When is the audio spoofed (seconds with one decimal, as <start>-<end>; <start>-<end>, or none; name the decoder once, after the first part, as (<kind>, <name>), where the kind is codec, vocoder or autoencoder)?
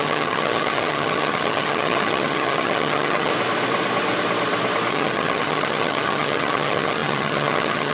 0.0-3.3 (vocoder, HiFi-GAN); 4.9-7.9